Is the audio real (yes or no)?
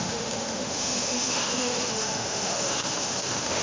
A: no